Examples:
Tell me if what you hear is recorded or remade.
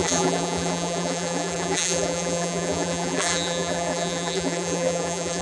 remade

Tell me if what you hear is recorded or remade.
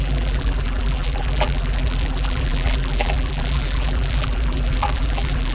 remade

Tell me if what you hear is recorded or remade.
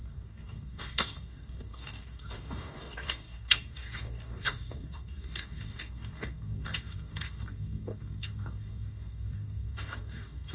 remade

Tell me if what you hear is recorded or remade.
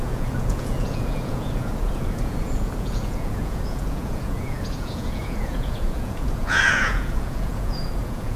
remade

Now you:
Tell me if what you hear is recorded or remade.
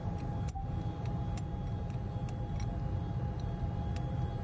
recorded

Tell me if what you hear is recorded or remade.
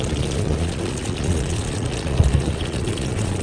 remade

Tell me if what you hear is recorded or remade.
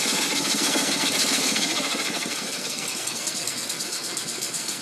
remade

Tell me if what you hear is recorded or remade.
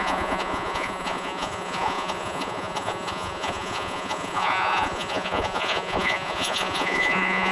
remade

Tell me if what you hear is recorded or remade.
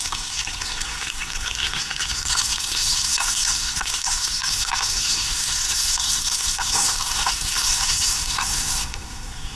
remade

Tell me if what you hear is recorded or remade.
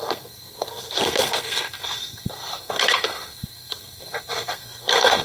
remade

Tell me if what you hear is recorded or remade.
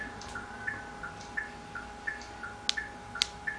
recorded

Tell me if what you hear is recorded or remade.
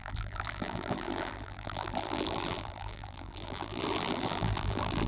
remade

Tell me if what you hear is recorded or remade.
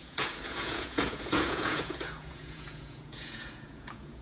remade